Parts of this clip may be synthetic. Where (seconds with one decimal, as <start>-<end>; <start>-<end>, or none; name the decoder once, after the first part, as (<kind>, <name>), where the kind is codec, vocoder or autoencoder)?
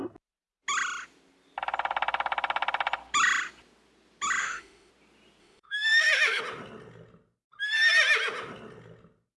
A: 4.4-4.9 (autoencoder, DAC-VAE); 5.4-6.4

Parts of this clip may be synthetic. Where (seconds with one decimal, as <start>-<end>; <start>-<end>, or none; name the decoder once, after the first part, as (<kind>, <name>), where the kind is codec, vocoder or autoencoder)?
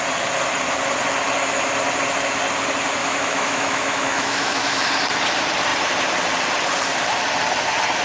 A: 3.0-4.8 (autoencoder, DAC-VAE)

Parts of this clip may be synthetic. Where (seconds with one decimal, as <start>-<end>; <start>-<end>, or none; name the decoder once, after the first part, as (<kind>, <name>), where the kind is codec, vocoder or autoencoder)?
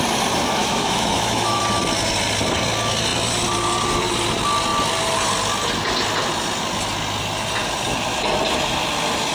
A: 0.6-1.6 (autoencoder, DAC-VAE)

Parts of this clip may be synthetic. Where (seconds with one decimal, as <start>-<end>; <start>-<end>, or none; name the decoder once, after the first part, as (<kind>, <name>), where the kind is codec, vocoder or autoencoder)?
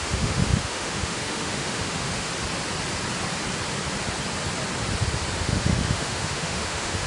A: 0.0-2.3 (autoencoder, DAC-VAE); 5.4-7.1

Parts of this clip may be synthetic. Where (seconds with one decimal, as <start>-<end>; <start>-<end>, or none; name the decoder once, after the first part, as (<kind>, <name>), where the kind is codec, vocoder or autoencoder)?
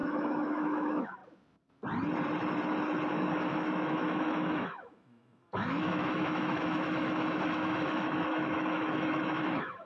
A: 0.0-1.2 (autoencoder, DAC-VAE); 3.1-9.9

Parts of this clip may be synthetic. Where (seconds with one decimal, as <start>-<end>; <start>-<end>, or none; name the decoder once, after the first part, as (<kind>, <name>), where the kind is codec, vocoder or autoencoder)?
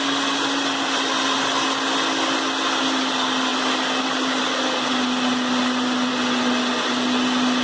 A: none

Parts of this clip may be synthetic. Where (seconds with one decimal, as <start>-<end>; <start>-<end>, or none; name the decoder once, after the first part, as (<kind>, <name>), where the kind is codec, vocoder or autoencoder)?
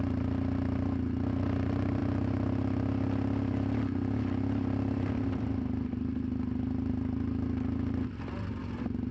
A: none